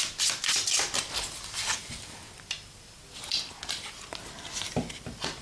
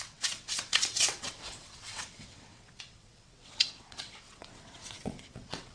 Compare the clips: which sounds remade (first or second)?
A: second